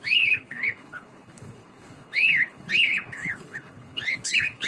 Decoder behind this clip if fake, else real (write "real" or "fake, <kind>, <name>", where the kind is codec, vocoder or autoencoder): fake, codec, HILCodec